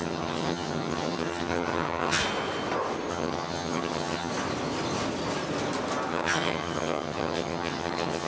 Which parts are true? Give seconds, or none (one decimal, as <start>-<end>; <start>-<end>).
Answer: 2.2-3.1; 4.3-6.1